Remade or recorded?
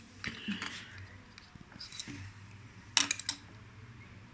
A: recorded